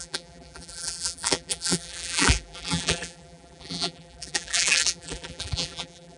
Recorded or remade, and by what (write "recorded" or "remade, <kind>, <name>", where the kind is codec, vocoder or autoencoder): remade, vocoder, BigVGAN v2